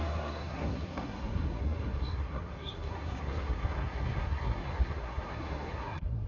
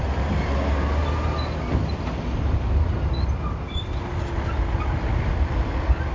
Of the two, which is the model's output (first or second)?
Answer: first